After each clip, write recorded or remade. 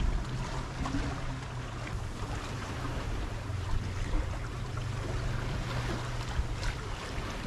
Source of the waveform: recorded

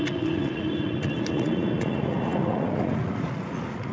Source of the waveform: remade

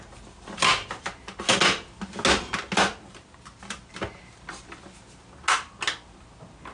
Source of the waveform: recorded